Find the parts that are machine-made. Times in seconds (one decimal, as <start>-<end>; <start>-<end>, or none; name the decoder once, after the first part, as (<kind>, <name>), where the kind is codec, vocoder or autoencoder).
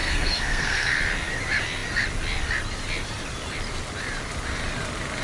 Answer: 0.0-1.0 (codec, SNAC)